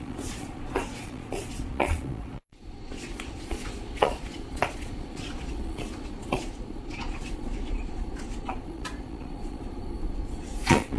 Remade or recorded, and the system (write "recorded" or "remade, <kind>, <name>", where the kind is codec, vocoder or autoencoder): remade, vocoder, Vocos